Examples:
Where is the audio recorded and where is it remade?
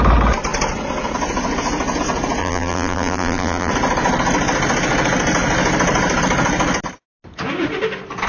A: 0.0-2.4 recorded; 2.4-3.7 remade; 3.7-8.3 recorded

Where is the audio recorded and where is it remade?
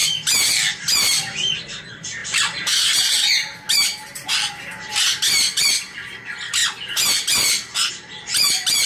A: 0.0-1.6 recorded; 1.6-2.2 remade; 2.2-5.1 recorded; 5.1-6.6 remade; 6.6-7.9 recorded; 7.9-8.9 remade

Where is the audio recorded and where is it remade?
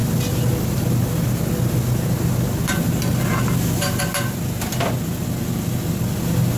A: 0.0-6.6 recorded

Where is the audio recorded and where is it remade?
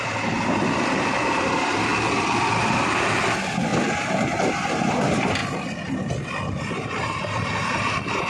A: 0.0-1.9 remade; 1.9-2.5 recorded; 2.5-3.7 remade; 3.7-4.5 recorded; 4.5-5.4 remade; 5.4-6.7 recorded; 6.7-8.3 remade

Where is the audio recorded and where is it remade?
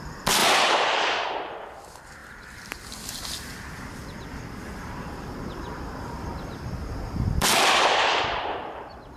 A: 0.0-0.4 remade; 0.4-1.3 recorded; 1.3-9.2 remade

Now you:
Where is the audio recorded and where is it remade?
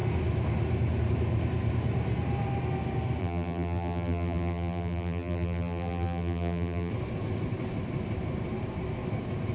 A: 0.0-3.2 recorded; 3.2-6.9 remade; 6.9-9.5 recorded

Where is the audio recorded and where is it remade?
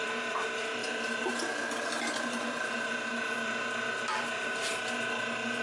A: 0.0-0.8 recorded; 0.8-1.3 remade; 1.3-5.6 recorded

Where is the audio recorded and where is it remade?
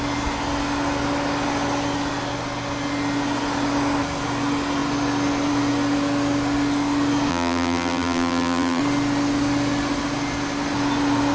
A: 0.0-7.3 recorded; 7.3-8.8 remade; 8.8-11.3 recorded